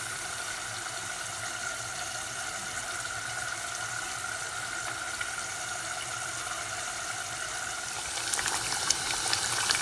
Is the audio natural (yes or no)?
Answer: no